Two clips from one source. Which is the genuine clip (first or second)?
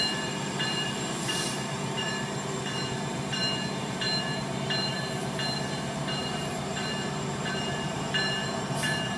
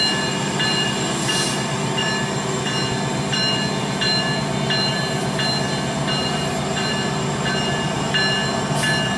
second